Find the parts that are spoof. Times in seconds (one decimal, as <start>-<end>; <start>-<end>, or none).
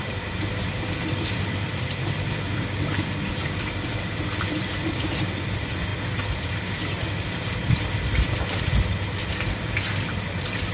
0.0-5.9; 7.2-10.7